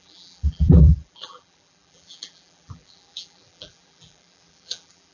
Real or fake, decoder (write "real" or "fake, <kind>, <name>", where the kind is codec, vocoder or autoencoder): fake, vocoder, BigVGAN v2